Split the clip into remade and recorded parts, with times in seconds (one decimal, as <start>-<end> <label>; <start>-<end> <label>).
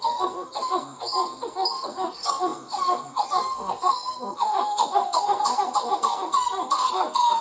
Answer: 0.0-7.4 remade